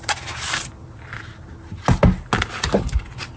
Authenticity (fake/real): real